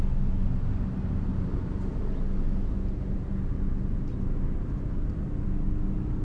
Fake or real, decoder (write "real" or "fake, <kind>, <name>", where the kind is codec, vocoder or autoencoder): real